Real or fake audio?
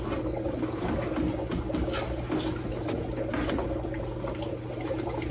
real